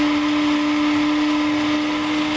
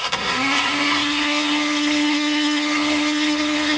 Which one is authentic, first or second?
first